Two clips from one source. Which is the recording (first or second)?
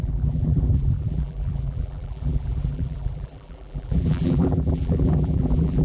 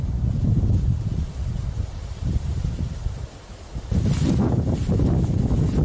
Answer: second